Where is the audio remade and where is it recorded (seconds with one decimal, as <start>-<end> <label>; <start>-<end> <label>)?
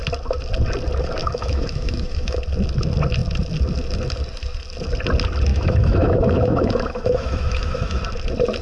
0.0-1.2 recorded; 1.2-2.4 remade; 2.4-5.5 recorded; 5.5-8.0 remade; 8.0-8.6 recorded